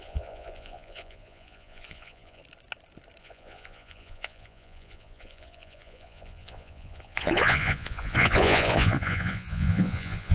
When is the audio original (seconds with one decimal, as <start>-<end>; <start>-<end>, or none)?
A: 2.4-3.2